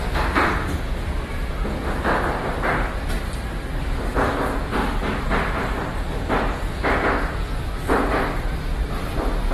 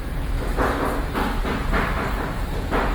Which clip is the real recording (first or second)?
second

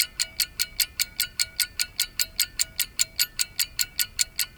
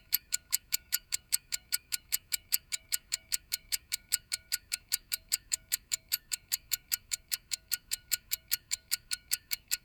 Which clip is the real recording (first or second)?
first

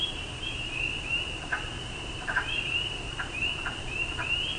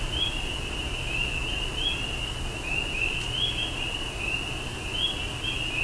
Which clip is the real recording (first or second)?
second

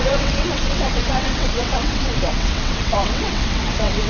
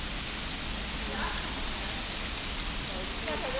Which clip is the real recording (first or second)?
second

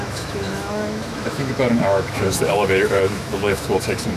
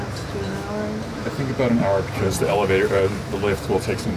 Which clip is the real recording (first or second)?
second